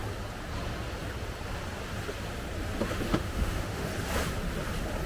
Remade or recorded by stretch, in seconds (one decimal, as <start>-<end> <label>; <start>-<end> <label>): 0.0-3.1 recorded; 3.1-3.9 remade; 3.9-5.1 recorded